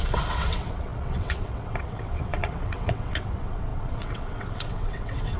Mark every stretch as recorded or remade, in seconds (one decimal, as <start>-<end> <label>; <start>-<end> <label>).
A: 0.0-5.4 remade